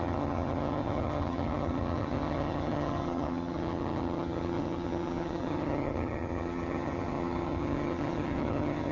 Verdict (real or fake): fake